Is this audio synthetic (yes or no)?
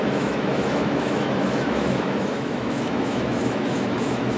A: yes